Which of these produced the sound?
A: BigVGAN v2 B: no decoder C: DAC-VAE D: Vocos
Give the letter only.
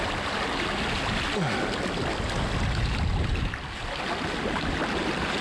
B